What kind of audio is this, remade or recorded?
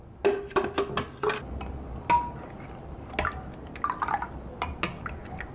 recorded